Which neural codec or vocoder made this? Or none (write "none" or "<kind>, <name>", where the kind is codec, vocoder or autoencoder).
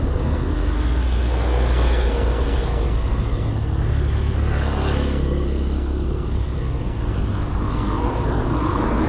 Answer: codec, SNAC